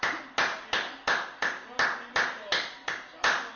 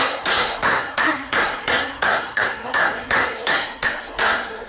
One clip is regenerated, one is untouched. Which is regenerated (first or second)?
second